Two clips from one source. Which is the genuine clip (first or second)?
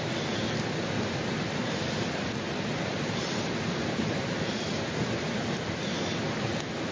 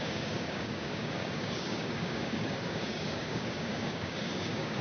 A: first